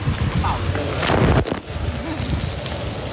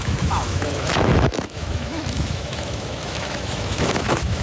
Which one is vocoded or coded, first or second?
second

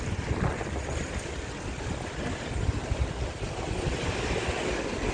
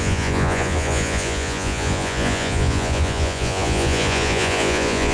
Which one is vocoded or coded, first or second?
second